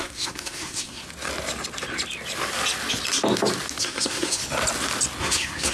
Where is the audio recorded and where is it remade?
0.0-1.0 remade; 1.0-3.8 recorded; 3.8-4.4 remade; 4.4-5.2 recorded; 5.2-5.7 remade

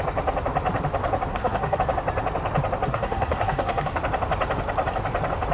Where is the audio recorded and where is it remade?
0.0-1.3 recorded; 1.3-1.8 remade; 1.8-2.9 recorded; 2.9-4.0 remade; 4.0-5.5 recorded

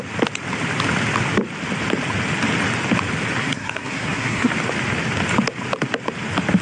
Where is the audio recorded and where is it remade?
0.0-3.4 recorded; 3.4-4.5 remade; 4.5-6.6 recorded

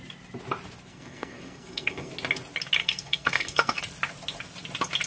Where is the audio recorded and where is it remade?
0.0-0.9 recorded; 0.9-2.1 remade; 2.1-2.8 recorded; 2.8-3.8 remade; 3.8-5.1 recorded

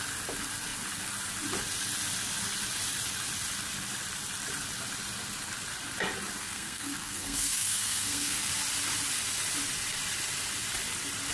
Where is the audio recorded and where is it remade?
0.0-6.4 recorded; 6.4-8.5 remade; 8.5-11.3 recorded